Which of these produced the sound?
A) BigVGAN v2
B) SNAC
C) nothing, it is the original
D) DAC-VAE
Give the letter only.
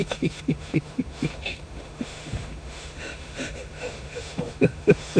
D